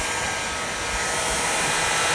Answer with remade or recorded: recorded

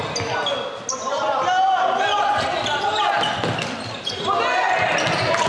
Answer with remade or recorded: recorded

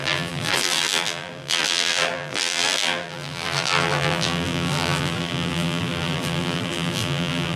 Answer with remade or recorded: remade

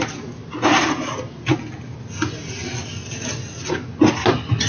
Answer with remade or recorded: recorded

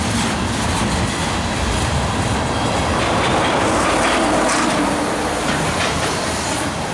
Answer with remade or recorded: remade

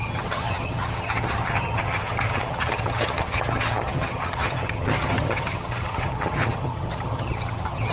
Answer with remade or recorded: remade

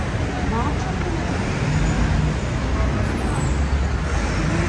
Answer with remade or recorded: recorded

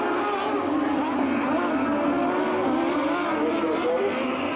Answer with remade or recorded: recorded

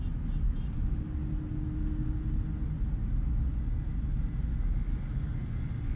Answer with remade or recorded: recorded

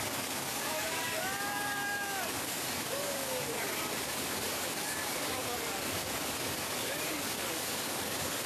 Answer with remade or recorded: remade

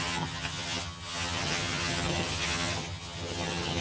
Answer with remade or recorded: remade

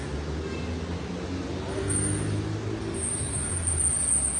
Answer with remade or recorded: recorded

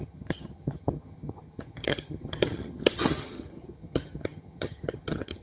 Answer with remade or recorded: remade